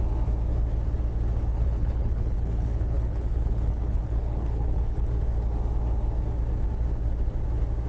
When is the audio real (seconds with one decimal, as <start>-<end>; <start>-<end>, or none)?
0.0-1.5; 5.1-7.9